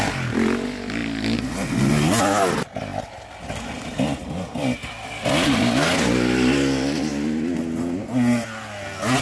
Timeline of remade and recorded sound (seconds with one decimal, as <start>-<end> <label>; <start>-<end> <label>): 0.0-9.2 recorded